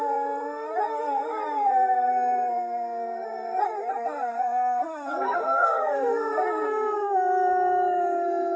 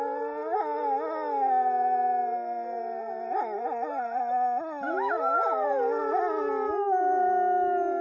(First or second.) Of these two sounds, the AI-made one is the first